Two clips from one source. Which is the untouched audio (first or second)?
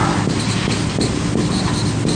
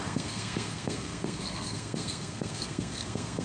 first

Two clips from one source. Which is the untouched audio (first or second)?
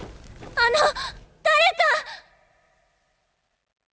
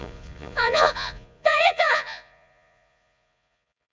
first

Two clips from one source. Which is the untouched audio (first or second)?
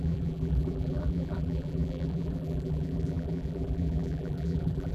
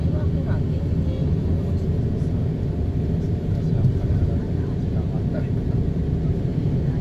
second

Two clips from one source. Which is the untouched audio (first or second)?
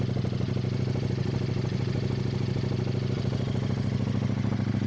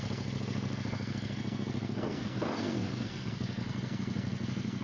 first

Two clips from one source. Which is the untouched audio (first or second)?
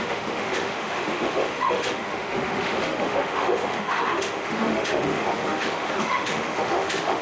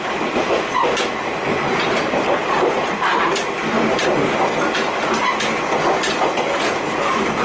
second